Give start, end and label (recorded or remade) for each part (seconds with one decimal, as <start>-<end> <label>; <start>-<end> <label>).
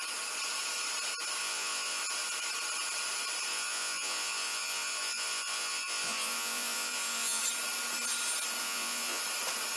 0.0-1.4 recorded; 1.4-2.0 remade; 2.0-3.5 recorded; 3.5-7.4 remade; 7.4-8.6 recorded; 8.6-9.2 remade; 9.2-9.8 recorded